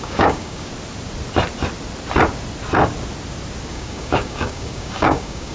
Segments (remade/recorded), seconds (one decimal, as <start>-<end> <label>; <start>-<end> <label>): 0.0-0.7 remade; 0.7-3.7 recorded; 3.7-5.5 remade